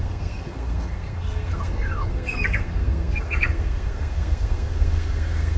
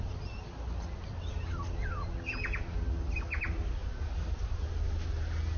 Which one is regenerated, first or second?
first